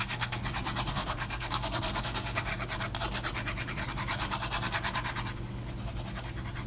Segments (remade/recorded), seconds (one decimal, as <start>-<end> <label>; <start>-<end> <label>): 0.0-0.4 remade; 0.4-0.9 recorded; 0.9-2.5 remade; 2.5-6.7 recorded